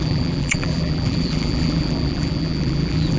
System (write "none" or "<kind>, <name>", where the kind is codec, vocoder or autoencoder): vocoder, BigVGAN v2